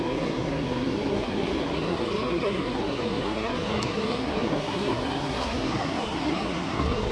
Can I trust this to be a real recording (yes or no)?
no